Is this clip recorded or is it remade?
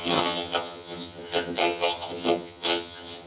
remade